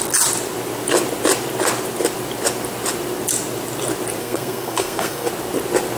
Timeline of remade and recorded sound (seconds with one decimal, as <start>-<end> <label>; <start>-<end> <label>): 0.0-4.2 recorded; 4.2-5.3 remade; 5.3-6.0 recorded